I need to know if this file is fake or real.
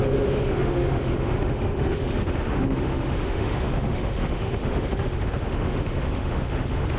fake